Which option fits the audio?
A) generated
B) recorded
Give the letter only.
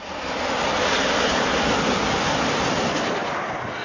B